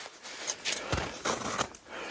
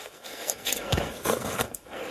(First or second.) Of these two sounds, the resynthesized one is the second